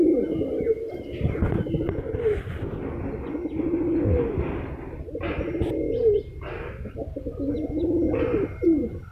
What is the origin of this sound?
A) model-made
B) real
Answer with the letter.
B